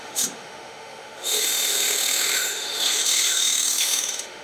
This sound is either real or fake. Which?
fake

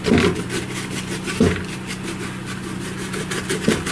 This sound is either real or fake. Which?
real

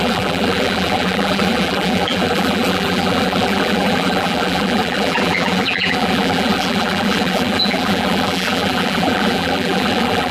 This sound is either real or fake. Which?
fake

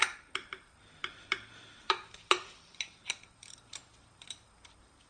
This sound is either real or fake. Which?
fake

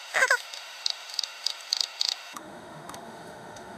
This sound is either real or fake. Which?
fake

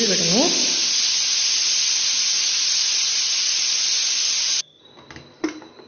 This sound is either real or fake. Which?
real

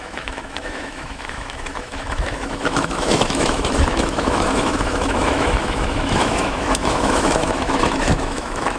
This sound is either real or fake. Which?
fake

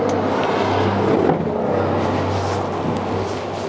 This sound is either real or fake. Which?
real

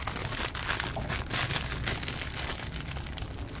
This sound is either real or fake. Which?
real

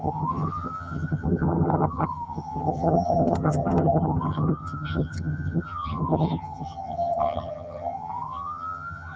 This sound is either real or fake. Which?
fake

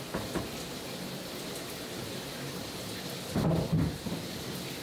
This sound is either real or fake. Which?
real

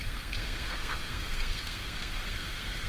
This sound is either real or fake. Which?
fake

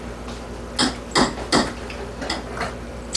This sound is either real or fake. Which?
real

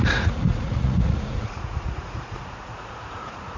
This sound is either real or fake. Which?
fake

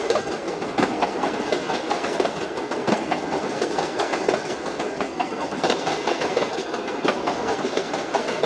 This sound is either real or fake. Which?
fake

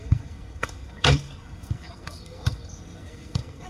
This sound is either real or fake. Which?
fake